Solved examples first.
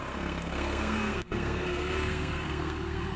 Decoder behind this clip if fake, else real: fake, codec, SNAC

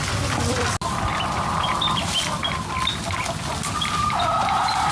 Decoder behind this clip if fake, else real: real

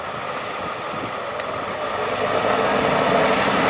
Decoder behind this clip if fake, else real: real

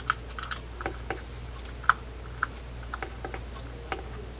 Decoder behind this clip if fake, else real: fake, vocoder, BigVGAN v2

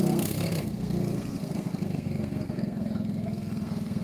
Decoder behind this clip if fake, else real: fake, codec, SNAC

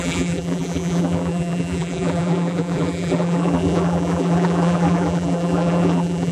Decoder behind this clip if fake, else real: fake, vocoder, BigVGAN v2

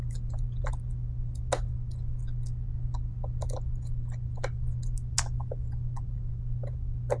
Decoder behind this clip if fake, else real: real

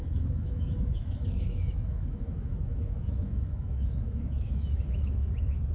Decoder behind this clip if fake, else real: fake, autoencoder, DAC-VAE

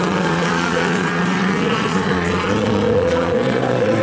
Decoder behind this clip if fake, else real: fake, vocoder, Vocos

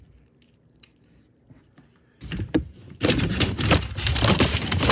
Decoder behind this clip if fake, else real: fake, vocoder, BigVGAN v2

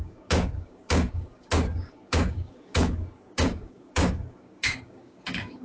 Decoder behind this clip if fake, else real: fake, codec, DAC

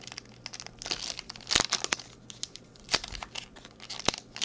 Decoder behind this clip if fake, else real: real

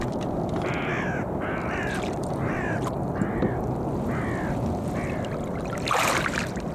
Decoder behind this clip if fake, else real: real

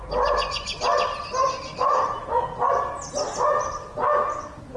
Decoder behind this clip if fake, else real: real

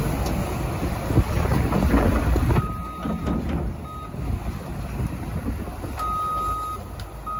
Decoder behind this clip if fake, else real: real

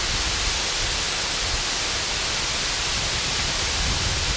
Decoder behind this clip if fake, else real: real